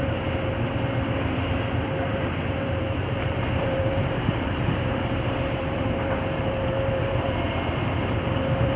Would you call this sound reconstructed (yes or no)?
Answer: yes